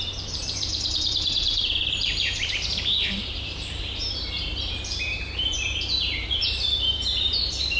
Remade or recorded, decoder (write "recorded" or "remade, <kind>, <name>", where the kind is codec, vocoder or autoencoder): remade, vocoder, BigVGAN v2